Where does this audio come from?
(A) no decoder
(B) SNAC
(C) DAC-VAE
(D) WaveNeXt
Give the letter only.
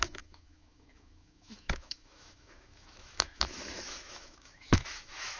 C